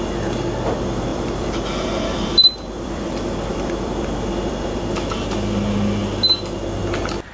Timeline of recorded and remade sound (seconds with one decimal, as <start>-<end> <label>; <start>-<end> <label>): 0.0-1.1 recorded; 1.1-4.8 remade; 4.8-7.3 recorded